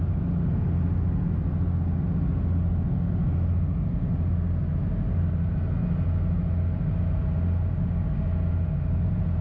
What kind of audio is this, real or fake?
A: real